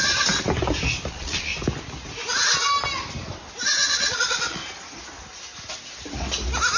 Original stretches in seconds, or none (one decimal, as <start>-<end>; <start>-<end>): 0.0-1.1; 1.5-3.9; 4.6-6.8